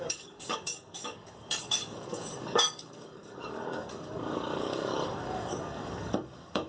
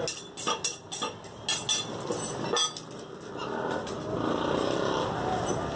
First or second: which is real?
second